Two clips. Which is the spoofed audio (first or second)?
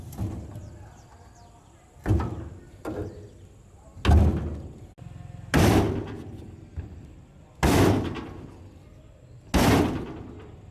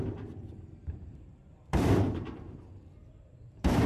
second